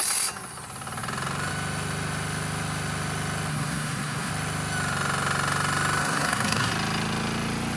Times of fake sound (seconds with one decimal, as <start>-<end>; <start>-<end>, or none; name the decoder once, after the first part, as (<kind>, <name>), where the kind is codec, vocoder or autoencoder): 3.5-4.3 (codec, SNAC); 6.0-6.7